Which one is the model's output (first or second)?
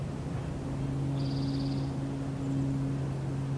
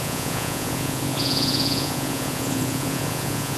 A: second